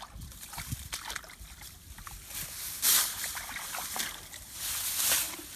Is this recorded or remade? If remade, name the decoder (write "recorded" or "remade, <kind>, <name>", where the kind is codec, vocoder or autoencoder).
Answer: recorded